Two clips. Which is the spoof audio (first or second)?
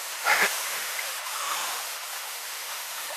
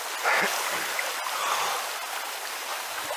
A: first